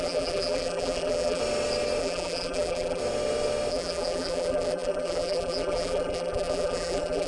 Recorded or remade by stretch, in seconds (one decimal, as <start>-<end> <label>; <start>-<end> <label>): 0.0-1.4 remade; 1.4-2.0 recorded; 2.0-3.0 remade; 3.0-3.7 recorded; 3.7-7.3 remade